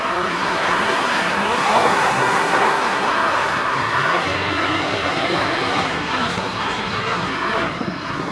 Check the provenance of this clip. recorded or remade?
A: remade